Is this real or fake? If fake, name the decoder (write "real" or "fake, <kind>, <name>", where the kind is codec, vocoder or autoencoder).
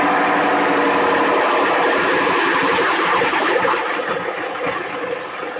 real